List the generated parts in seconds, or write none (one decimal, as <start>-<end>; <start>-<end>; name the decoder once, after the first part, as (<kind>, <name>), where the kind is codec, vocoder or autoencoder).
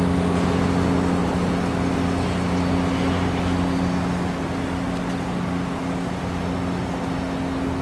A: none